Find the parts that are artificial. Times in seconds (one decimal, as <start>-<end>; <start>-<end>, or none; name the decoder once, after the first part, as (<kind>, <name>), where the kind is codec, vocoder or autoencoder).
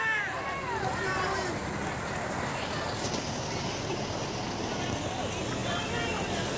none